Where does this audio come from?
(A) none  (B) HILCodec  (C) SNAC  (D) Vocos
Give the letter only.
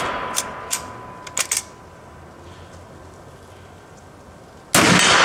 A